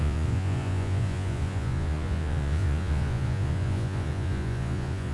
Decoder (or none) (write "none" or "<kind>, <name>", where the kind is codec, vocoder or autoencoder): vocoder, Vocos